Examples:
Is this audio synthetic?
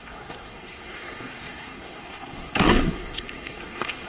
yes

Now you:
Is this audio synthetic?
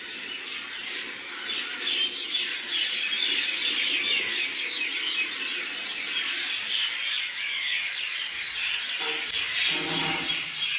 no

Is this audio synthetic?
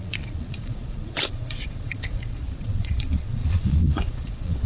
yes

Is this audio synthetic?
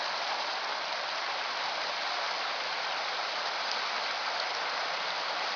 no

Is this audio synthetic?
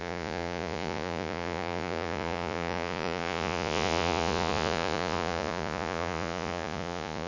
yes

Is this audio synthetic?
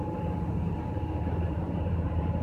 yes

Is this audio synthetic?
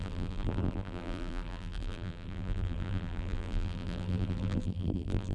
yes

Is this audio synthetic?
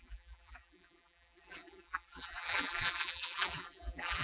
yes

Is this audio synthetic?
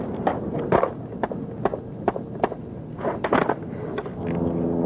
no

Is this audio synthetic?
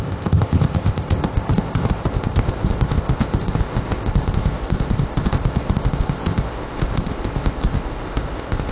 yes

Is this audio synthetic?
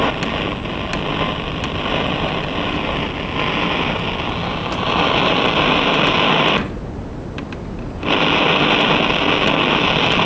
no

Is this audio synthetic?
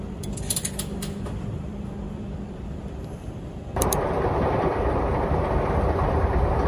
yes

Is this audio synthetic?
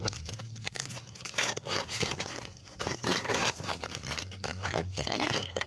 yes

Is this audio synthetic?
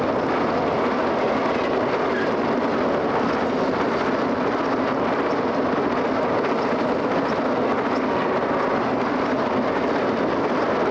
no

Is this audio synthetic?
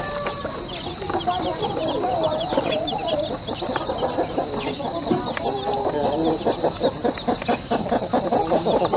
no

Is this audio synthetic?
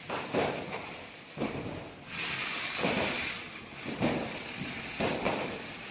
yes